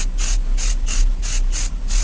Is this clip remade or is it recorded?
recorded